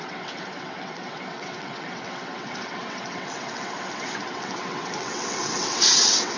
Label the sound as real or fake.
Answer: fake